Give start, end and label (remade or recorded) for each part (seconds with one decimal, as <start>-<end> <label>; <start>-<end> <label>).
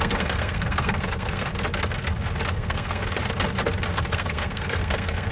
0.0-1.5 remade; 1.5-2.5 recorded; 2.5-3.0 remade; 3.0-4.1 recorded; 4.1-5.3 remade